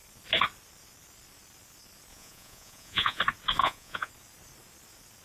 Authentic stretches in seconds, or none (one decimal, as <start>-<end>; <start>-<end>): 0.0-2.1; 3.2-3.6; 4.1-5.2